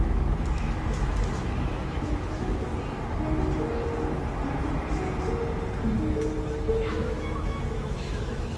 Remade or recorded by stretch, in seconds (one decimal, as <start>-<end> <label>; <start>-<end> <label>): 0.0-2.7 remade; 2.7-6.7 recorded; 6.7-8.6 remade